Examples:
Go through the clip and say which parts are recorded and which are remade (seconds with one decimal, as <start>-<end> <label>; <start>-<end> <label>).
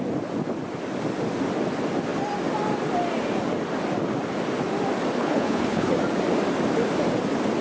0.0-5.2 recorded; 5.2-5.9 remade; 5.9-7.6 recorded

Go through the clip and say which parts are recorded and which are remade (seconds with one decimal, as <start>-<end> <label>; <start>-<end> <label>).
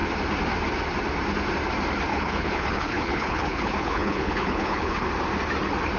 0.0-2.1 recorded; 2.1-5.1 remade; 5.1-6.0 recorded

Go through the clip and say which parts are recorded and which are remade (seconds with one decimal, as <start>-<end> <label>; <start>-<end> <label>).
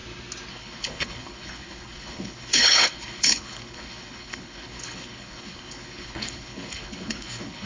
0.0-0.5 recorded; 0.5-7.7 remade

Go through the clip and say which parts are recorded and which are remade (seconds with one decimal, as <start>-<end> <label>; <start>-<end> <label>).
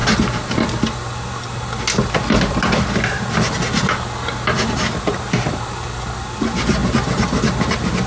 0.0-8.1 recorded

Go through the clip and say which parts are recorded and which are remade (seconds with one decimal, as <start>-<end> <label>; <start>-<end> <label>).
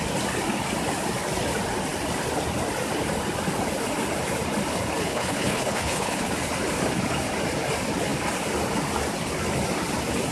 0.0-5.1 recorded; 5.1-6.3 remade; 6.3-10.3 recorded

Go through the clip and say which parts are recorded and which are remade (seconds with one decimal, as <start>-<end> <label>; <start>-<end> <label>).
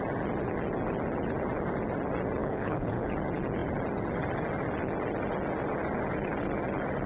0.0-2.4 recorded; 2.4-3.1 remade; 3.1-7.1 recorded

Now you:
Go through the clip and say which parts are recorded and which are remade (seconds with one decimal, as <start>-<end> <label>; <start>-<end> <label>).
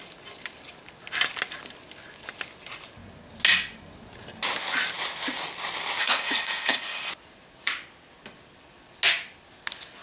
0.0-6.0 recorded; 6.0-7.1 remade; 7.1-10.0 recorded